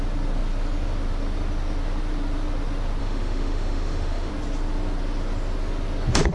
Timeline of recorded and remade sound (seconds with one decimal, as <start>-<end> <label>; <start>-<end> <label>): 0.0-3.0 recorded; 3.0-4.3 remade; 4.3-6.3 recorded